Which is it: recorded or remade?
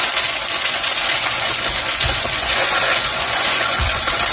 remade